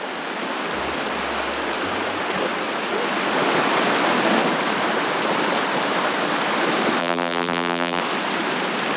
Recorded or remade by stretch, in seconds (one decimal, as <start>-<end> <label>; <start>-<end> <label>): 0.0-7.0 recorded; 7.0-8.0 remade; 8.0-9.0 recorded